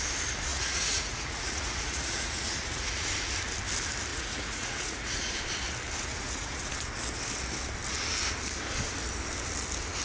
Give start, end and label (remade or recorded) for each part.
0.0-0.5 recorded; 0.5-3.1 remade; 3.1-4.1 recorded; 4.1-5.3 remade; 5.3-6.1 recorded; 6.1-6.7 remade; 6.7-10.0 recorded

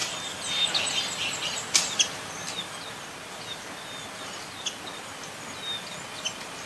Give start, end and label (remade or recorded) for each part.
0.0-6.7 recorded

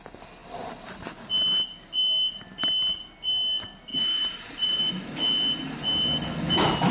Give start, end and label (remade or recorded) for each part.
0.0-0.4 recorded; 0.4-1.3 remade; 1.3-3.9 recorded; 3.9-4.9 remade; 4.9-6.9 recorded